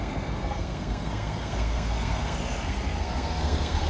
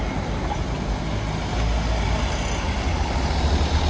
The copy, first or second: first